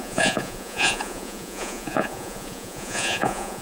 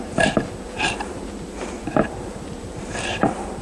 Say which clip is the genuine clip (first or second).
second